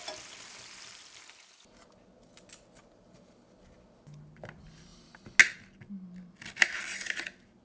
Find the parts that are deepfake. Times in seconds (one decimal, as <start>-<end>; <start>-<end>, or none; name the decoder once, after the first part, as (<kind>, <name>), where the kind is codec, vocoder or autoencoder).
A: none